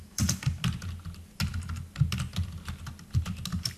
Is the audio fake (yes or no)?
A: no